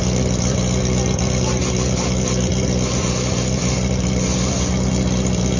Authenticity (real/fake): real